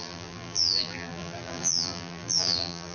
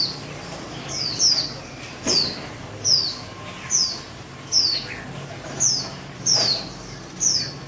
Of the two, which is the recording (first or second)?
second